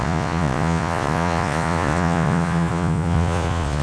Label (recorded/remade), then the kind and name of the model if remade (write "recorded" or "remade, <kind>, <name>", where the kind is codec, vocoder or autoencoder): remade, vocoder, Vocos